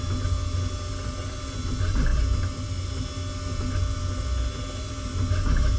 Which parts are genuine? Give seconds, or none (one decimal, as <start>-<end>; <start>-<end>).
0.0-5.8